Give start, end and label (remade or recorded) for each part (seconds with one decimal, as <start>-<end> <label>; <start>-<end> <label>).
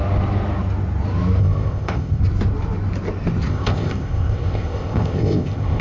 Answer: 0.0-1.4 recorded; 1.4-2.2 remade; 2.2-3.5 recorded; 3.5-5.8 remade